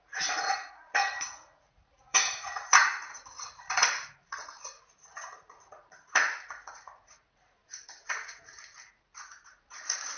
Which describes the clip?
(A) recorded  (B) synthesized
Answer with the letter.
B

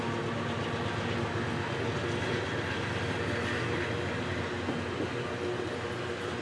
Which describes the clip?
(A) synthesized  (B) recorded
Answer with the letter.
B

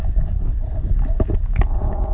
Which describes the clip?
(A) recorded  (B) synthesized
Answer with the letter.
A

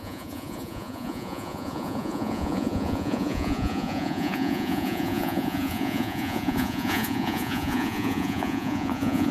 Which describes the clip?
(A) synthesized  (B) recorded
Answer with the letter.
A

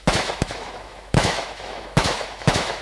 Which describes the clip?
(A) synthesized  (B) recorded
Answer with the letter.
A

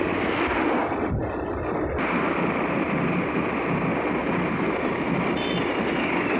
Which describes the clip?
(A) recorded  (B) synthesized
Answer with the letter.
A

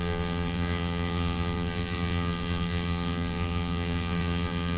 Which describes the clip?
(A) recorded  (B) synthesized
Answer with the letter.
B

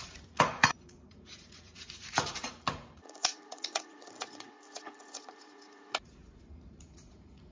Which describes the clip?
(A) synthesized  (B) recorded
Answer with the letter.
A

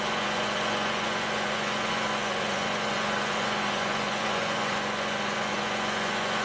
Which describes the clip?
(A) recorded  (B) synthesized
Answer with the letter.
B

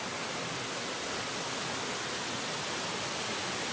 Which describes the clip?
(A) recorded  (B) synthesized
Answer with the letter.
A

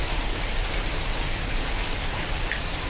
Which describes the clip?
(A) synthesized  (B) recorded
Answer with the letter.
A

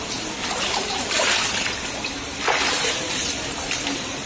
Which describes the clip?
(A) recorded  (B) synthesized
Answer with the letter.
B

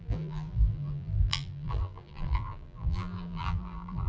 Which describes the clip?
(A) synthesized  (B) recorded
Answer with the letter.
A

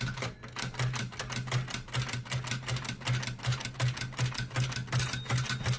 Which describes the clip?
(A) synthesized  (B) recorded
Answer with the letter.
B